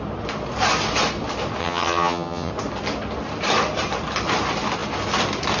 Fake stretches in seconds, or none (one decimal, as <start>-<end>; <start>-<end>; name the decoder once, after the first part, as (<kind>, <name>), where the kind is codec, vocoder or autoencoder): 1.6-2.5 (vocoder, HiFi-GAN)